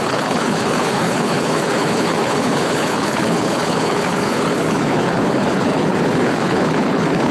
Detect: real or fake fake